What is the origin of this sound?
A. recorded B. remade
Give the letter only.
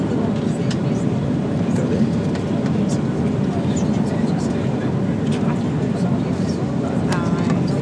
A